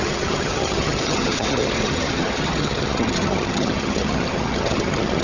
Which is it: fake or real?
fake